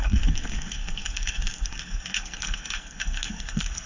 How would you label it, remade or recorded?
remade